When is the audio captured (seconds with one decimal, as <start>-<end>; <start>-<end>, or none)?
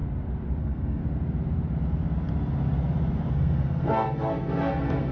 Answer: 0.0-0.6; 1.0-3.3